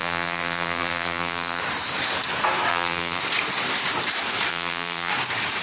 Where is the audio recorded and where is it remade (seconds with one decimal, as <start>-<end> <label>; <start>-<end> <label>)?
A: 0.0-1.6 remade; 1.6-2.7 recorded; 2.7-3.2 remade; 3.2-4.5 recorded; 4.5-5.1 remade; 5.1-5.6 recorded